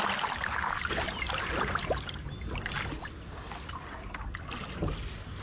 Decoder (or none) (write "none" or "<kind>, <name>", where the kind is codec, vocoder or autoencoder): none